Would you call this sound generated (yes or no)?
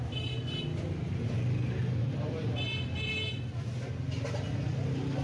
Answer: no